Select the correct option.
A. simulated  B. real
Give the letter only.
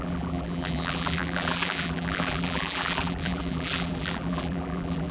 A